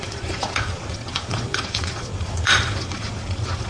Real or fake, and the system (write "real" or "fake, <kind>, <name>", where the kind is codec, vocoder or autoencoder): fake, vocoder, Vocos